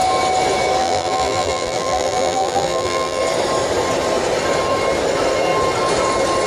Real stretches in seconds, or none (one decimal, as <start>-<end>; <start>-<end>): 0.0-0.8; 3.2-6.5